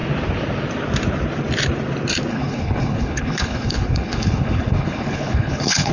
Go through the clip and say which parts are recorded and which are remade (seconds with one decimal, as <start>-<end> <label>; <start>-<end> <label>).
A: 0.0-2.3 recorded; 2.3-5.9 remade